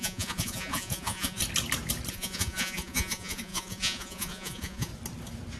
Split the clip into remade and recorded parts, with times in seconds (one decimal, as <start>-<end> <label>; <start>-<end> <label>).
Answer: 0.0-1.4 remade; 1.4-2.1 recorded; 2.1-4.9 remade; 4.9-5.6 recorded